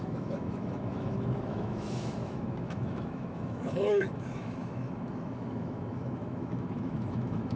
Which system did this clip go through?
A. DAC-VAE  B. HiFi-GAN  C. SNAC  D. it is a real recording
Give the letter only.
A